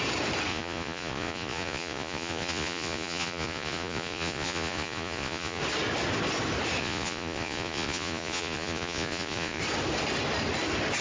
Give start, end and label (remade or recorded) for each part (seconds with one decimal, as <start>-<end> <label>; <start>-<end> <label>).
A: 0.0-0.5 recorded; 0.5-5.6 remade; 5.6-6.8 recorded; 6.8-9.6 remade; 9.6-11.0 recorded